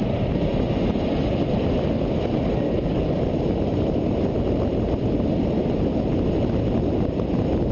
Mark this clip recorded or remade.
recorded